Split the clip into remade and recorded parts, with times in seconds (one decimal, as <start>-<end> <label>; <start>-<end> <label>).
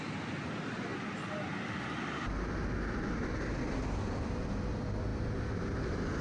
0.0-6.2 recorded